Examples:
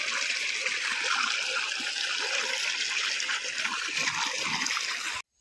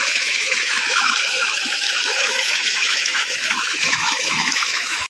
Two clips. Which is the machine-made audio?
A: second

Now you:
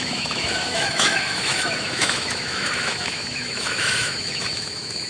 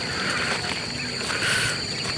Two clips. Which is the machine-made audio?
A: first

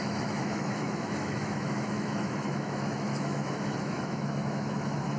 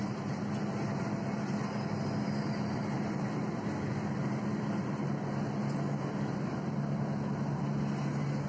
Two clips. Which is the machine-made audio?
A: first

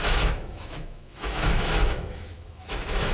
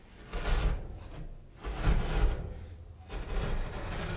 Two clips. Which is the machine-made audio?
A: first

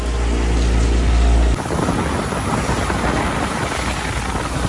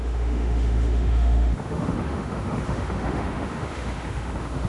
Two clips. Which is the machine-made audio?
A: second